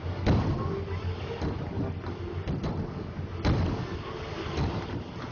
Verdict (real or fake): real